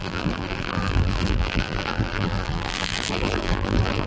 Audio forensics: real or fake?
fake